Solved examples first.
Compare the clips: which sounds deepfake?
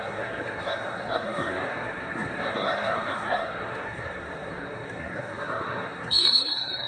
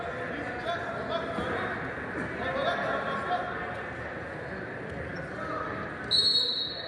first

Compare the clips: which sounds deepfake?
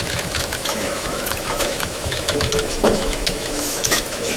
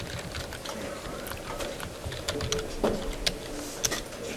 first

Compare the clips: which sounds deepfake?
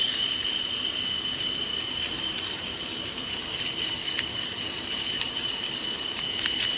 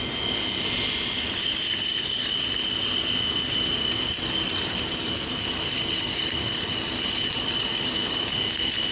first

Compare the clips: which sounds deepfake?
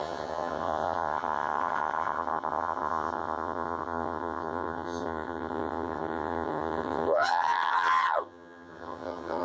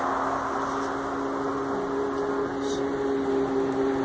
first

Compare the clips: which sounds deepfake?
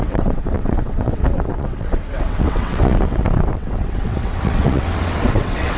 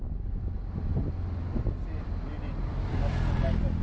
first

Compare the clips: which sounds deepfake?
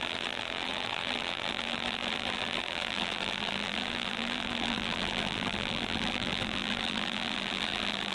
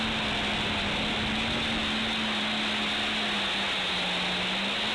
first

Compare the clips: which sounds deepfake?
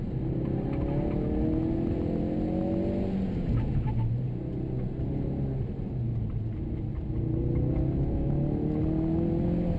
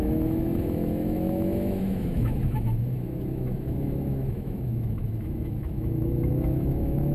second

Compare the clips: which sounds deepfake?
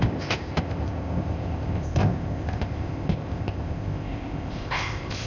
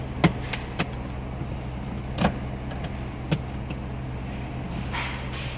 first